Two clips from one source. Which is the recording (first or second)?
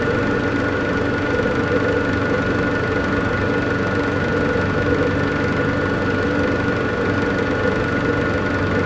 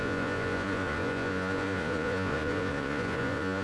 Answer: first